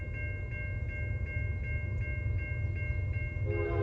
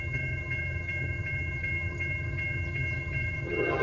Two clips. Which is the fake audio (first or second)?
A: second